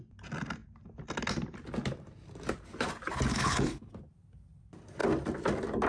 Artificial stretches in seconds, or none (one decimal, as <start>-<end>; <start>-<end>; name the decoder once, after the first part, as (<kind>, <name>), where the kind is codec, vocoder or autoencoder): 3.3-3.9 (codec, HILCodec)